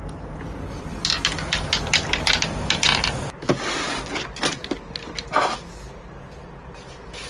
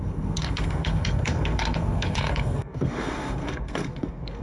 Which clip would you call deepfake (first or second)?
second